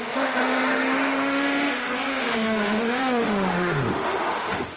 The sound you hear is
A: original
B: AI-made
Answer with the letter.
B